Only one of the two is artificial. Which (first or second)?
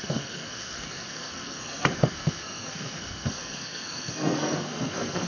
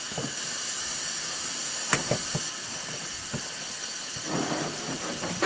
first